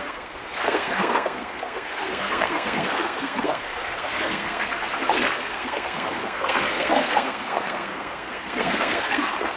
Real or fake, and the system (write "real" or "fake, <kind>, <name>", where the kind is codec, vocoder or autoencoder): fake, codec, SNAC